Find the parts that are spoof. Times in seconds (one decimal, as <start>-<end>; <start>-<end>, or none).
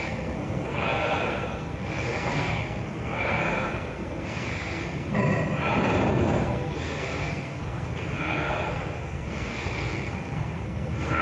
0.0-5.2; 6.1-11.2